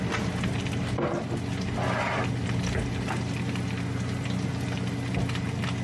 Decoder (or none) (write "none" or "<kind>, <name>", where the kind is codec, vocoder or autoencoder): none